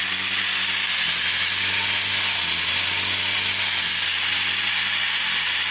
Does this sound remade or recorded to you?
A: recorded